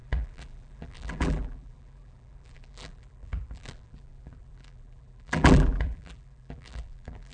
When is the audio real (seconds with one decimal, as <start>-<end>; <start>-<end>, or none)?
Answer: none